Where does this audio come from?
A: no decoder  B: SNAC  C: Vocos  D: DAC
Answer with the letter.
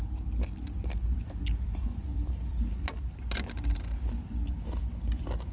A